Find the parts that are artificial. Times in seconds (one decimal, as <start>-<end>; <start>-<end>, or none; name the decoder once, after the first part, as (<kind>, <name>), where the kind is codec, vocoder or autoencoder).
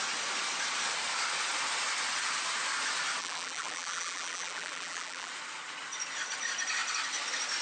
3.2-5.3 (vocoder, BigVGAN v2)